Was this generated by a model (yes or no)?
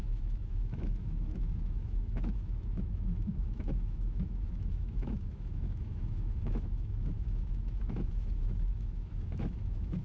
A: yes